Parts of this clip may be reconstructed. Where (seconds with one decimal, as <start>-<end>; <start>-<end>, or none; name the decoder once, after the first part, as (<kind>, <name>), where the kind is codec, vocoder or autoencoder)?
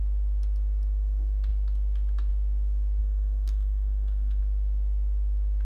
3.0-4.4 (codec, SNAC)